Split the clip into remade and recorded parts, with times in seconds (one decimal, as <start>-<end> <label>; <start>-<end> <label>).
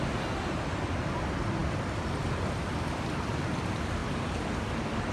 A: 0.0-5.1 recorded